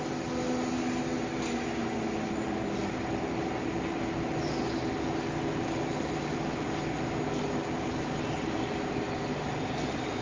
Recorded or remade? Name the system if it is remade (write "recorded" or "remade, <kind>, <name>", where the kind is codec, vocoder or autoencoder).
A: recorded